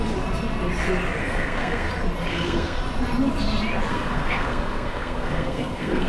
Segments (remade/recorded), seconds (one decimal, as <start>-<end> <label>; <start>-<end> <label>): 0.0-1.2 recorded; 1.2-1.9 remade; 1.9-2.3 recorded; 2.3-2.8 remade; 2.8-3.9 recorded; 3.9-6.1 remade